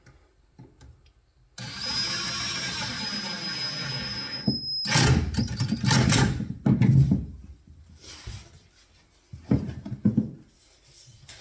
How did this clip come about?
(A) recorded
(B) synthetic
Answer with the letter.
A